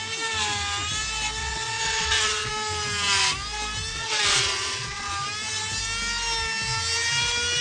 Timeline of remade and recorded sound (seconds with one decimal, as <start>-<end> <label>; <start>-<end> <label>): 0.0-1.4 recorded; 1.4-2.5 remade; 2.5-3.9 recorded; 3.9-5.1 remade; 5.1-7.6 recorded